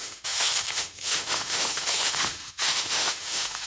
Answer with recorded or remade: remade